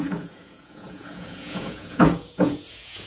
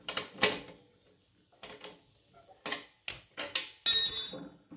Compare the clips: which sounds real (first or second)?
second